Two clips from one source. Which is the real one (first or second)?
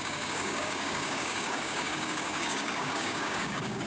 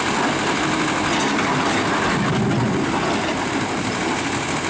second